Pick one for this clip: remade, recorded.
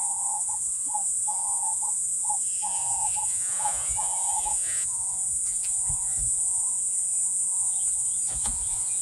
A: remade